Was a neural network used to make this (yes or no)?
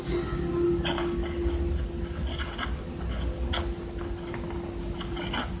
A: no